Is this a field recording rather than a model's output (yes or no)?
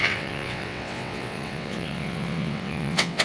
no